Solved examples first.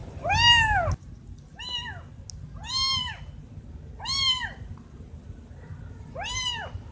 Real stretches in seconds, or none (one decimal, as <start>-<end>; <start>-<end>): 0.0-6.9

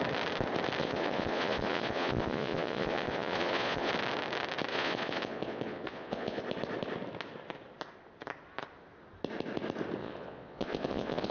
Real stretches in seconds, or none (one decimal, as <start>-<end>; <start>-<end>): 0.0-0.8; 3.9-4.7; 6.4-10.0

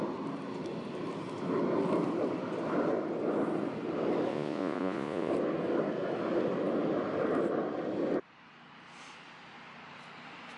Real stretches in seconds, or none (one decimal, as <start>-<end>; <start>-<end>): 0.0-4.3; 5.3-10.6

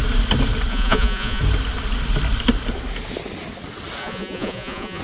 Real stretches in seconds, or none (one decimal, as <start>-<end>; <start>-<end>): 0.0-0.7; 1.4-4.0

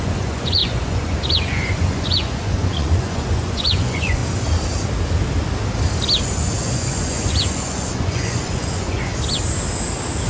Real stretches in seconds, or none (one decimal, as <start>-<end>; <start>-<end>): 4.2-6.2; 9.1-10.3

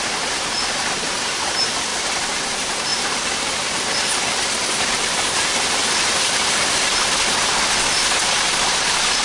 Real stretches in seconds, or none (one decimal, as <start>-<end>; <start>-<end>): 0.0-9.2

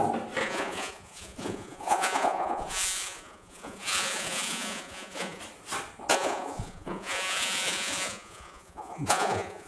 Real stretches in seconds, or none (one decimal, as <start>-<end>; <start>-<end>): 0.0-0.4; 5.4-6.1